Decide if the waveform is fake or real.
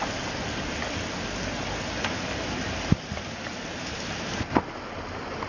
real